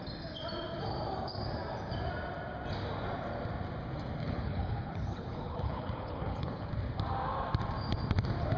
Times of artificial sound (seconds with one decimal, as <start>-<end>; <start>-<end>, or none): 4.2-6.7